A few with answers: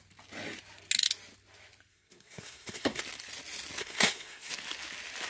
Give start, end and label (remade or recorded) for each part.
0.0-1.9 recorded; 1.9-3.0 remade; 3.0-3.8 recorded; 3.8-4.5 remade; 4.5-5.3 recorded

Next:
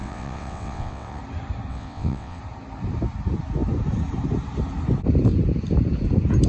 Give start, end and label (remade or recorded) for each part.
0.0-1.2 remade; 1.2-1.7 recorded; 1.7-2.4 remade; 2.4-6.5 recorded

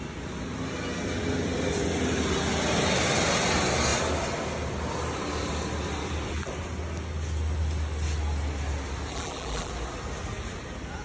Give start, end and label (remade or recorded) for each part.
0.0-9.1 recorded; 9.1-9.7 remade; 9.7-11.0 recorded